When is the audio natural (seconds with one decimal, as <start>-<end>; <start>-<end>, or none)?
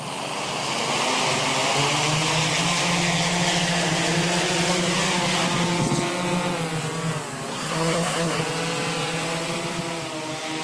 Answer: 0.0-7.5; 8.4-10.6